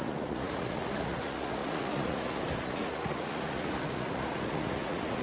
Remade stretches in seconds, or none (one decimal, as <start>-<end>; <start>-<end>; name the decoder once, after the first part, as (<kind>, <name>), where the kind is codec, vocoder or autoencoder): 0.0-5.2 (vocoder, Vocos)

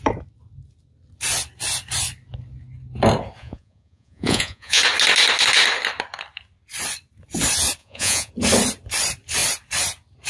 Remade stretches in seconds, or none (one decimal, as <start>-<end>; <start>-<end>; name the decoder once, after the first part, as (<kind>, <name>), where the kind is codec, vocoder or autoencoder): 3.4-4.8 (vocoder, Vocos); 7.8-8.3

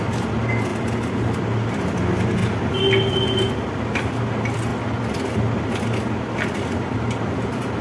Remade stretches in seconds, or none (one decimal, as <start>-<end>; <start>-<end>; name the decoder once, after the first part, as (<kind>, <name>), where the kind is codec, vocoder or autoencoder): none